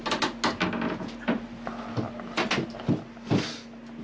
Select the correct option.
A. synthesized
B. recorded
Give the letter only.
B